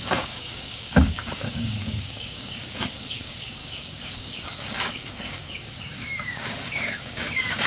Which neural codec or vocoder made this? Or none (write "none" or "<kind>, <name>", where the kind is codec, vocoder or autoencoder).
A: codec, DAC